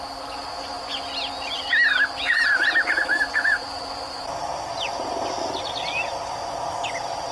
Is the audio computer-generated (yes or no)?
no